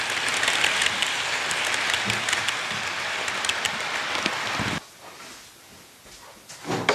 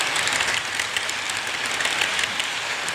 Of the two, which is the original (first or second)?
first